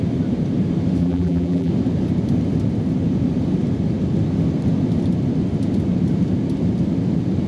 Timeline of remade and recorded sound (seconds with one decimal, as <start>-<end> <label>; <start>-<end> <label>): 0.0-1.0 recorded; 1.0-1.7 remade; 1.7-7.5 recorded